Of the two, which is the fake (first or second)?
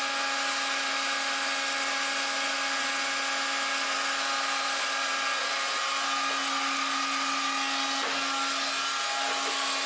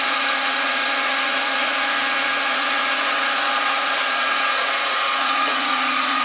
second